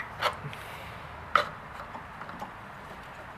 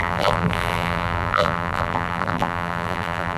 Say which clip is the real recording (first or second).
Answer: first